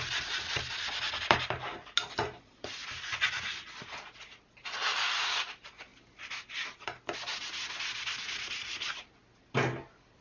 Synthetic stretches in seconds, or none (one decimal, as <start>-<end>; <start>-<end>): none